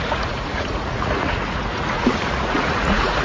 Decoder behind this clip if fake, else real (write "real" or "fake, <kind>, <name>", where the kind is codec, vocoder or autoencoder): fake, vocoder, Vocos